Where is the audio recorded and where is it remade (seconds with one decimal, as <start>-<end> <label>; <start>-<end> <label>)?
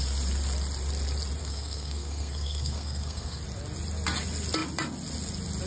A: 0.0-1.4 recorded; 1.4-3.4 remade; 3.4-5.7 recorded